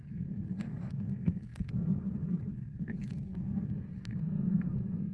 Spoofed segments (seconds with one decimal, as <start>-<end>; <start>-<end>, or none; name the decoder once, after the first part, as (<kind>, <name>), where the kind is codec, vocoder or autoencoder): 0.0-5.1 (codec, SNAC)